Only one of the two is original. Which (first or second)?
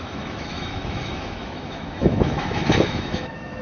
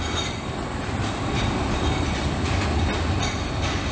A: second